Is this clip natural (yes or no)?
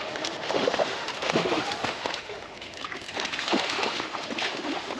no